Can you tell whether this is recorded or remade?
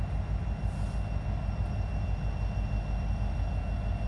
recorded